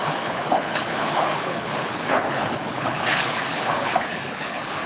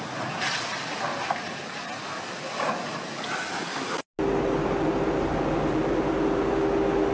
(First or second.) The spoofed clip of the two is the first